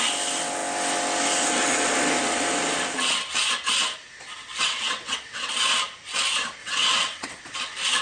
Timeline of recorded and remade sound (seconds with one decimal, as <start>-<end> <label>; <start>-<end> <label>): 0.0-4.5 recorded; 4.5-5.5 remade; 5.5-6.6 recorded; 6.6-7.4 remade; 7.4-8.0 recorded